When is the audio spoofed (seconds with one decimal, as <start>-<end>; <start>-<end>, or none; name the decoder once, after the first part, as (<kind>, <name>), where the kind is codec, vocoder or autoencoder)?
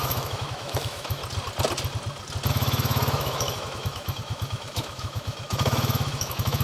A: 0.0-1.2 (autoencoder, DAC-VAE); 2.5-6.6